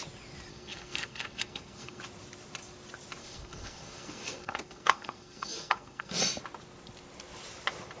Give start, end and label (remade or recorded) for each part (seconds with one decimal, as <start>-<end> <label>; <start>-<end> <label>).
0.0-0.5 recorded; 0.5-2.0 remade; 2.0-3.2 recorded; 3.2-6.2 remade; 6.2-8.0 recorded